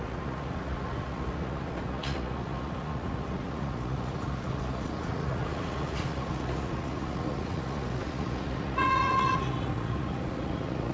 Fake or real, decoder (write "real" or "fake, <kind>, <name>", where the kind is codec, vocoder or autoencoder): fake, vocoder, Vocos